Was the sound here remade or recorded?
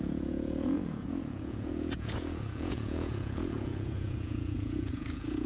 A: remade